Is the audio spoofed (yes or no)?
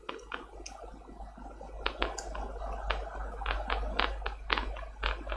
no